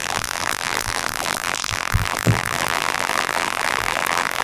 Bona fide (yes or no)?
no